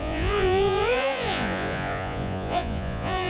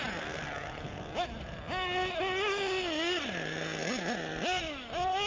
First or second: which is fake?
first